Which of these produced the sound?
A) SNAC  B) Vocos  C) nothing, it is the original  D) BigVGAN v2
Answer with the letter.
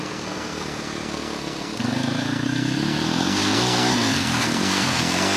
A